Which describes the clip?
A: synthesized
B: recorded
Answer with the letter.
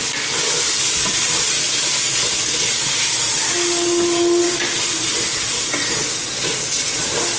B